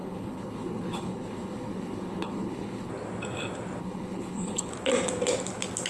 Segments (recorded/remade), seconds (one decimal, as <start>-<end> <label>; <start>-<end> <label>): 0.0-2.9 remade; 2.9-3.8 recorded; 3.8-4.7 remade; 4.7-5.9 recorded